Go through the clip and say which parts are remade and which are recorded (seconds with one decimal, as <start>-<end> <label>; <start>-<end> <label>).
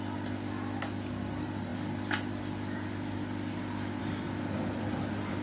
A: 0.0-5.4 recorded